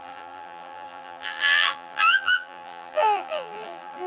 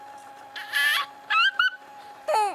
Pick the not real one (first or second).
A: first